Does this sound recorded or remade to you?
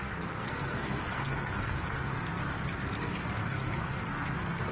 remade